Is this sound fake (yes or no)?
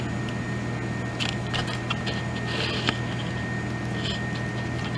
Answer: no